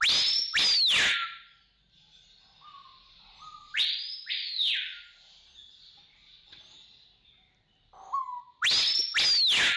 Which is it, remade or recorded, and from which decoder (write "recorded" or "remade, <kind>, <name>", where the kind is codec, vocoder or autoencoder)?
recorded